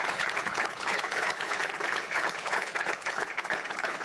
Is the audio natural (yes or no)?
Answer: no